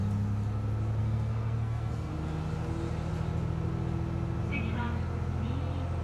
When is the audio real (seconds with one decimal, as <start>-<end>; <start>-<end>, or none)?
0.0-1.0; 2.1-6.0